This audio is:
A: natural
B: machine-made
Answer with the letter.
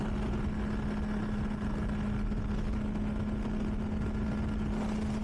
A